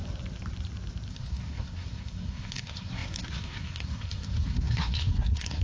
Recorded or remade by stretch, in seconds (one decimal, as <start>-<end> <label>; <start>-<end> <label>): 0.0-1.1 recorded; 1.1-5.6 remade